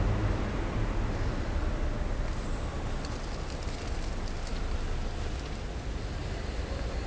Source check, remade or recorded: recorded